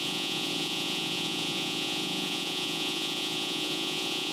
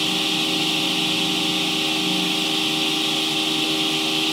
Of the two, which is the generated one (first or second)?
first